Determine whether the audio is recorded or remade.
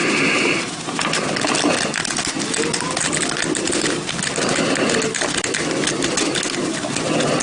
recorded